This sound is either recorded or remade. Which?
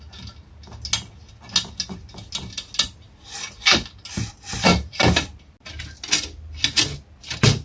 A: recorded